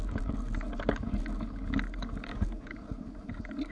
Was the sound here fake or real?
fake